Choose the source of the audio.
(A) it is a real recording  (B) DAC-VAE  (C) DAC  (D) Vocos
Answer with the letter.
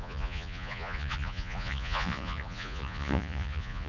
D